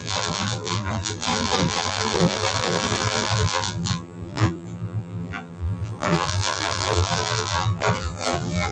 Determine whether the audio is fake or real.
fake